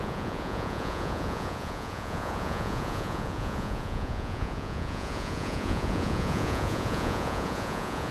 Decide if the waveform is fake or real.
fake